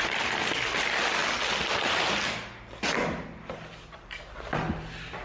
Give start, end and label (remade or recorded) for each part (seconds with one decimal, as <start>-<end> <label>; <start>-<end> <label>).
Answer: 0.0-5.2 recorded

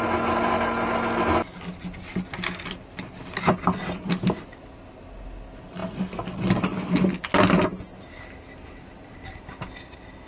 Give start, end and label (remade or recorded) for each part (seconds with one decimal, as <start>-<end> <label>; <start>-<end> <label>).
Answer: 0.0-10.3 recorded

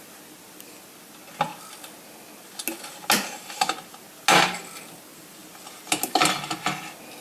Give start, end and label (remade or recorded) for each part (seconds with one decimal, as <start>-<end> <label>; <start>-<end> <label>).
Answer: 0.0-7.2 recorded

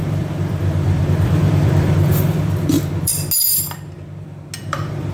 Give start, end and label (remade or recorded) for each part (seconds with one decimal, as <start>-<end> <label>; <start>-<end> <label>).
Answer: 0.0-3.1 remade; 3.1-4.6 recorded; 4.6-5.1 remade